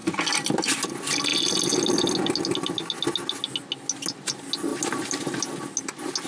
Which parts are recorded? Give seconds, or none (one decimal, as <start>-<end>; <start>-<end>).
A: 0.7-6.3